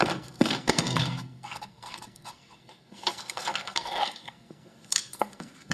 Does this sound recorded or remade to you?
remade